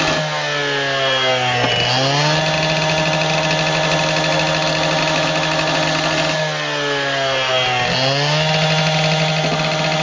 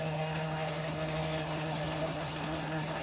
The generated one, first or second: second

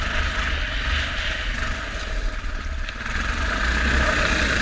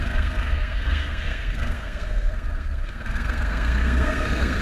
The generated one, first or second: second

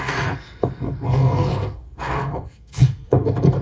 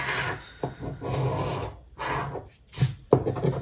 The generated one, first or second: first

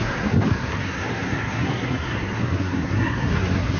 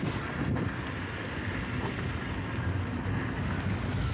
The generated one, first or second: first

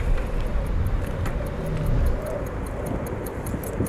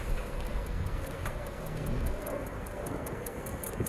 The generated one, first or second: second